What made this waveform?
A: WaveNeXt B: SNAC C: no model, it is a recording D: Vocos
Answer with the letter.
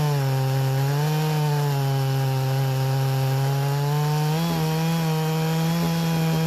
C